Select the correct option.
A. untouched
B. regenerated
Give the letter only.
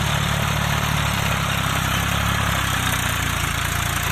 A